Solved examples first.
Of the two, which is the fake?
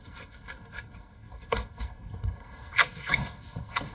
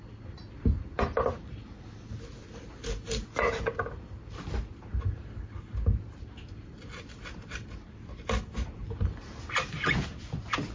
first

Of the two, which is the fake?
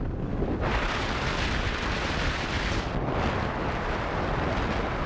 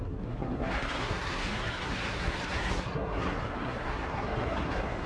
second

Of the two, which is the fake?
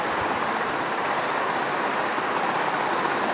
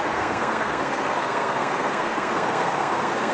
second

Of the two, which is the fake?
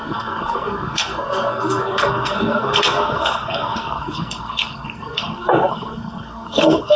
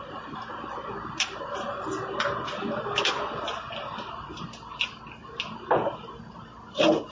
first